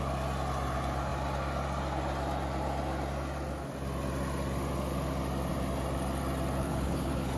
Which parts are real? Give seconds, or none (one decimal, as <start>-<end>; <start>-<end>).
0.0-6.6